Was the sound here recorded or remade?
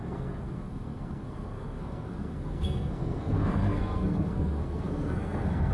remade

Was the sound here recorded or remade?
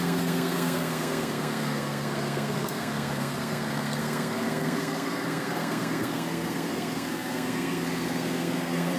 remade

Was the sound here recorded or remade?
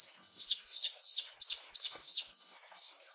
remade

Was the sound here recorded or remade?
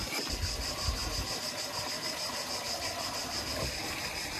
recorded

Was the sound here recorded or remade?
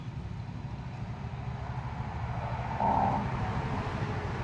recorded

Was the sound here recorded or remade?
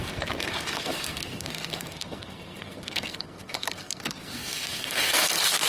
remade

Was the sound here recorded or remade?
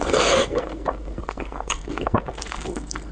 remade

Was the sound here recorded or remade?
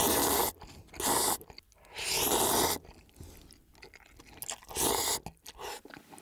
recorded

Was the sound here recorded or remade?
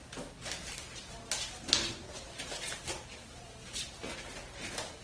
recorded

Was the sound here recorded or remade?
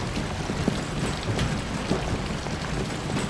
recorded